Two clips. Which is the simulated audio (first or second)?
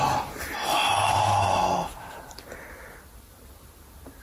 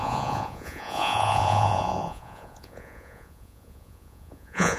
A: second